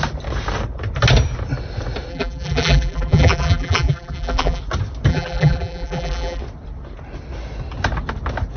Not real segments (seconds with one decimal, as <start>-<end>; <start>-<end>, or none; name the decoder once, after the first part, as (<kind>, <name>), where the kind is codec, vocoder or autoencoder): 2.1-4.6 (vocoder, BigVGAN v2); 5.1-6.4